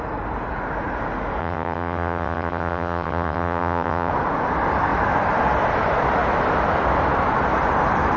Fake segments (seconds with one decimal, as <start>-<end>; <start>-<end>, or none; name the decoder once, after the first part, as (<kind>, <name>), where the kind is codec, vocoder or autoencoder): 1.4-4.1 (vocoder, HiFi-GAN)